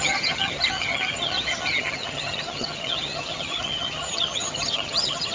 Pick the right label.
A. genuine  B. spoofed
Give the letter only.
B